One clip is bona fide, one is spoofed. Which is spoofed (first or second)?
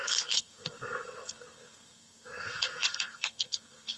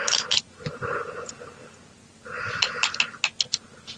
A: first